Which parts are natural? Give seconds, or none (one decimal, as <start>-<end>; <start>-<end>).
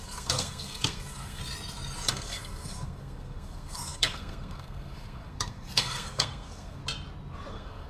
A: 1.4-2.1; 6.8-7.5